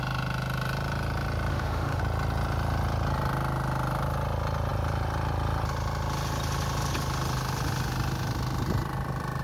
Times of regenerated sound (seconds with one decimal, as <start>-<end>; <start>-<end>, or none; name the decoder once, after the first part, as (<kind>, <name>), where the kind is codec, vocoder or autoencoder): 1.5-2.0 (autoencoder, DAC-VAE)